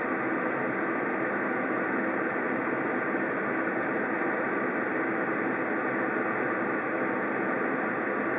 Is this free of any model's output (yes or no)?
yes